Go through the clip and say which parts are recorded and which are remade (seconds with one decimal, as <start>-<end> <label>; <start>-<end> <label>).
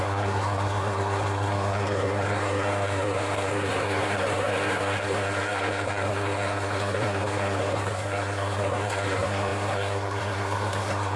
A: 0.0-11.2 remade